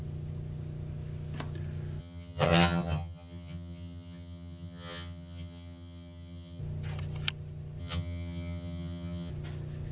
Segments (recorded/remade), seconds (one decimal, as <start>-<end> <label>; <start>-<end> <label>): 0.0-2.0 recorded; 2.0-6.6 remade; 6.6-7.8 recorded; 7.8-9.3 remade; 9.3-9.9 recorded